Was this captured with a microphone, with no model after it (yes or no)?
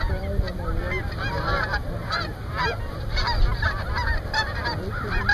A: no